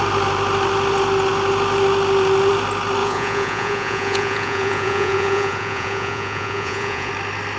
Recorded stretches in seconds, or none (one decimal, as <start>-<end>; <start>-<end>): 0.0-3.0; 7.1-7.6